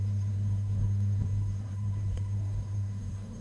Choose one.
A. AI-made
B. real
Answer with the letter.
A